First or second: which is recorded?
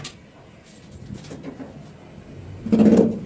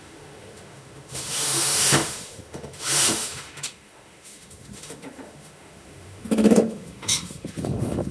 first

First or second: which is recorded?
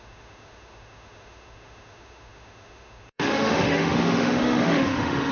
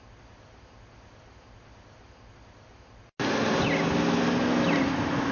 second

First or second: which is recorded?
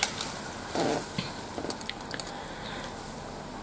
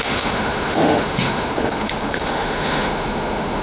first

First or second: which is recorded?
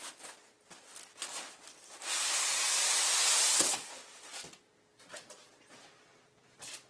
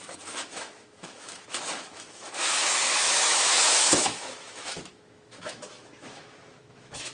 first